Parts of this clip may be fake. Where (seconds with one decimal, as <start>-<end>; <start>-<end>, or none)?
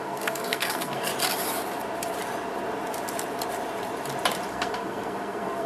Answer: 0.0-1.1; 4.5-5.7